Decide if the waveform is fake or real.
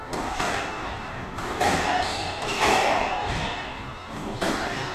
fake